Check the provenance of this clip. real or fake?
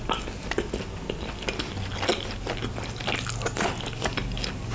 real